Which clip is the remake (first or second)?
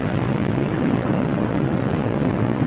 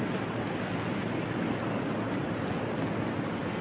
first